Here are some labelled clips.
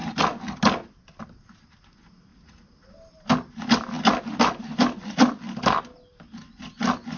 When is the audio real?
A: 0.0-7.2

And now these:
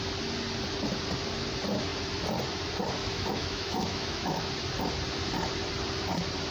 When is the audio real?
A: 0.0-3.0; 4.5-6.5

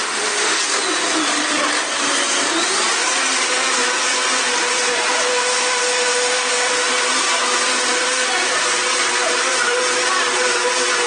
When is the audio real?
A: 0.6-5.3; 6.7-11.1